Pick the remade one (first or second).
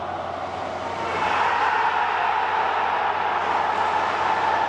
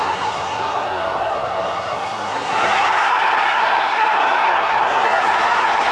second